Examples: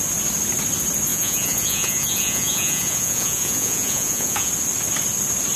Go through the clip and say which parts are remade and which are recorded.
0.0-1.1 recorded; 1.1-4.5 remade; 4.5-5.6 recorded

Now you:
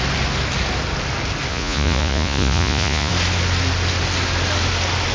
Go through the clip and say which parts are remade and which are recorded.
0.0-1.5 recorded; 1.5-3.1 remade; 3.1-5.1 recorded

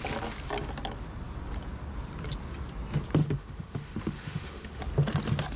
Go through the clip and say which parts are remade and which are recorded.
0.0-3.2 recorded; 3.2-4.8 remade; 4.8-5.6 recorded

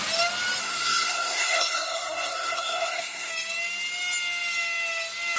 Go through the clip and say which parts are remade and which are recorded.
0.0-0.6 recorded; 0.6-3.3 remade; 3.3-5.4 recorded

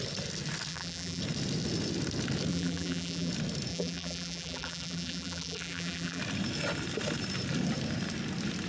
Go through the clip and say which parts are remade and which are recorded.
0.0-0.7 recorded; 0.7-1.2 remade; 1.2-2.5 recorded; 2.5-3.3 remade; 3.3-3.7 recorded; 3.7-6.2 remade; 6.2-8.7 recorded